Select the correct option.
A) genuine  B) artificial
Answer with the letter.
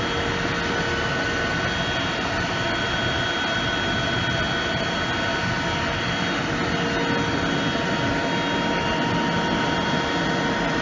A